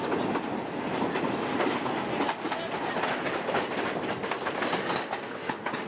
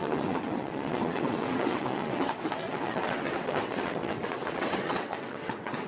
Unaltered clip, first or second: first